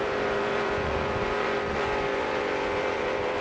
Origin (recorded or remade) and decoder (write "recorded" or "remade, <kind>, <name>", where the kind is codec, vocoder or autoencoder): remade, vocoder, Vocos